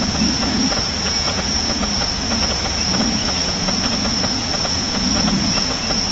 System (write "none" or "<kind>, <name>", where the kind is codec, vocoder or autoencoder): vocoder, Vocos